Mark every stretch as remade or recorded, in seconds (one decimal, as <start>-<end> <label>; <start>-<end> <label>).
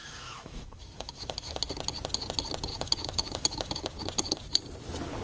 0.0-1.6 remade; 1.6-2.7 recorded; 2.7-4.0 remade; 4.0-5.2 recorded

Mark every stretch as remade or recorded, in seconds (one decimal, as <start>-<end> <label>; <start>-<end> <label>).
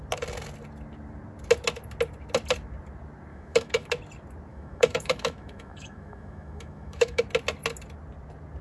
0.0-3.3 recorded; 3.3-3.9 remade; 3.9-4.5 recorded; 4.5-7.2 remade; 7.2-8.6 recorded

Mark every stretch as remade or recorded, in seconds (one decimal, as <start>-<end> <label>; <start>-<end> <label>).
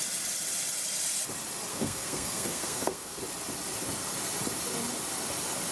0.0-1.7 recorded; 1.7-3.2 remade; 3.2-5.7 recorded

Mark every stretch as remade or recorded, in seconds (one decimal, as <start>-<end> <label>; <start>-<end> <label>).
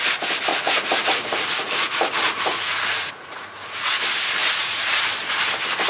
0.0-0.5 recorded; 0.5-4.0 remade; 4.0-4.4 recorded; 4.4-5.0 remade; 5.0-5.9 recorded